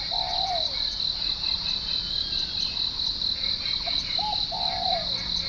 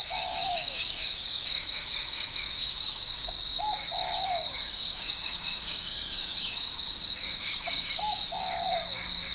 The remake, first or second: second